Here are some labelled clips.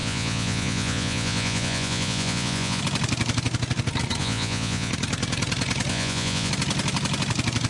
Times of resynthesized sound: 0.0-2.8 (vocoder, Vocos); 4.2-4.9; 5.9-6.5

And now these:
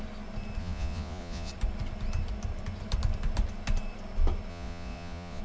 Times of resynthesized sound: 0.6-1.5 (vocoder, Vocos); 4.5-5.4